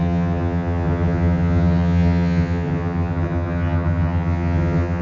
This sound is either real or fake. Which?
fake